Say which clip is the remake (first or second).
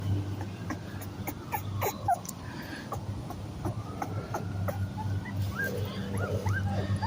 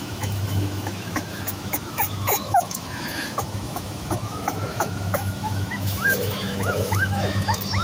second